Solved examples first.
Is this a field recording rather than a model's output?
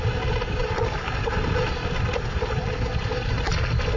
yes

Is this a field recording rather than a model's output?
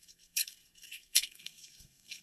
no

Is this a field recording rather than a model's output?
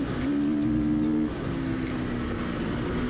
yes